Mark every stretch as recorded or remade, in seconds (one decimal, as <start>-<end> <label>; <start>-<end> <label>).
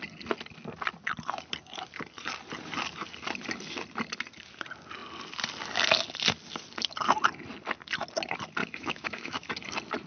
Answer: 0.0-8.6 recorded; 8.6-9.5 remade; 9.5-10.1 recorded